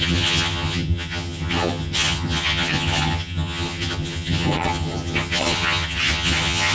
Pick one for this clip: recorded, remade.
remade